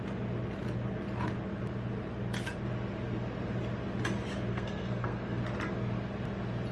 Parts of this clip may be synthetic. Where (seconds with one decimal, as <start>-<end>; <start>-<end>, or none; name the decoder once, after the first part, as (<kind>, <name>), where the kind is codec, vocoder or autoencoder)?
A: 4.5-5.4 (codec, SNAC)